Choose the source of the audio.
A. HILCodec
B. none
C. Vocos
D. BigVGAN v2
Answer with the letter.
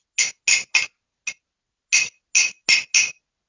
B